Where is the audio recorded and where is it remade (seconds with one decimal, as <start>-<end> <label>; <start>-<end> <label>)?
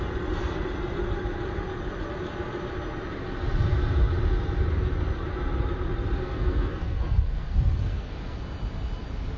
0.0-6.2 recorded; 6.2-8.4 remade; 8.4-9.4 recorded